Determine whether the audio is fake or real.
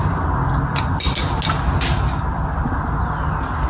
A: real